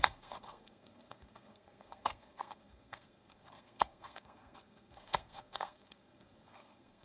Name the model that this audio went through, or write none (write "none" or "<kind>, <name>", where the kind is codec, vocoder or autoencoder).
codec, SNAC